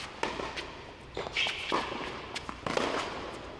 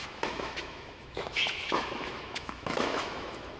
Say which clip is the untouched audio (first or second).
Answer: first